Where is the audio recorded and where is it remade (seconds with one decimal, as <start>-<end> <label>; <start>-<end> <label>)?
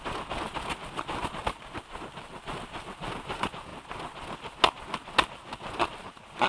0.0-6.5 recorded